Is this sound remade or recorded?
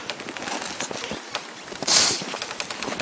recorded